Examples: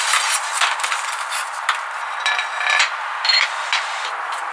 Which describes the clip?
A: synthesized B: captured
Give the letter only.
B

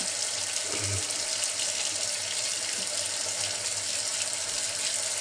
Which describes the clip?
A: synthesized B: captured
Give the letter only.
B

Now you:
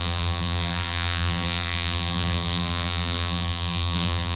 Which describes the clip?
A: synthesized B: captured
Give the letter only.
A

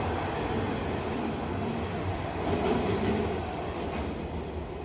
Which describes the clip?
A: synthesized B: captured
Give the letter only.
B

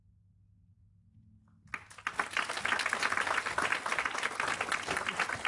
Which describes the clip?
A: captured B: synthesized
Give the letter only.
A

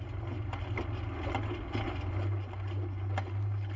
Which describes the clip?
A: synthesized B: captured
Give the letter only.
B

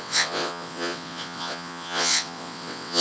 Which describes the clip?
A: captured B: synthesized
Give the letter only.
B